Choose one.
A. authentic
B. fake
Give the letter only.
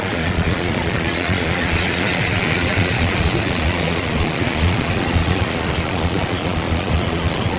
B